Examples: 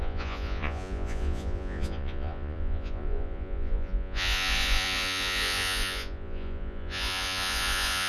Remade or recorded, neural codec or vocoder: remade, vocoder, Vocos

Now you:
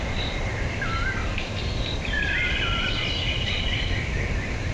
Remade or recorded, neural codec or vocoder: remade, vocoder, BigVGAN v2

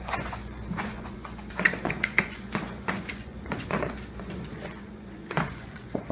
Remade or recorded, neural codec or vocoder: remade, vocoder, Vocos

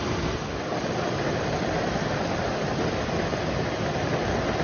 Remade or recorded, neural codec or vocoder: remade, vocoder, BigVGAN v2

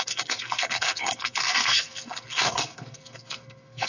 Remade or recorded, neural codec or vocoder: remade, codec, SNAC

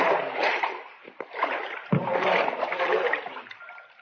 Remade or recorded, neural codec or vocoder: remade, vocoder, BigVGAN v2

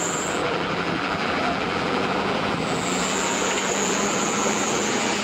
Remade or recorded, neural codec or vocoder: remade, vocoder, BigVGAN v2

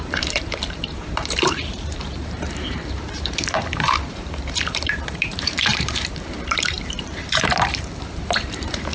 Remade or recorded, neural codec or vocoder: remade, vocoder, BigVGAN v2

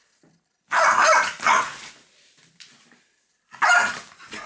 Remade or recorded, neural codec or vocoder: recorded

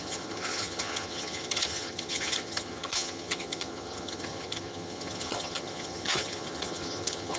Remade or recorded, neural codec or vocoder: remade, vocoder, HiFi-GAN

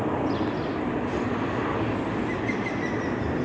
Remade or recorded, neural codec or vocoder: recorded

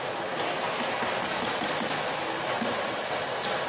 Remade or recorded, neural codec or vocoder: recorded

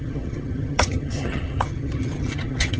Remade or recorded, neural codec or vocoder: remade, vocoder, HiFi-GAN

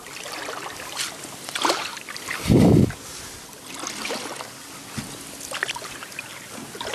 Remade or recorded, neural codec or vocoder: recorded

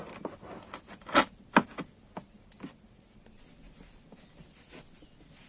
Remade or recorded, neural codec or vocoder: recorded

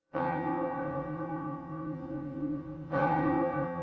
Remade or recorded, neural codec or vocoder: remade, vocoder, WaveNeXt